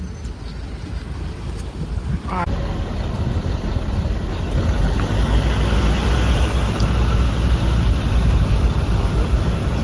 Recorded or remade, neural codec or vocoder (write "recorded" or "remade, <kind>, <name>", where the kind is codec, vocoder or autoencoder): recorded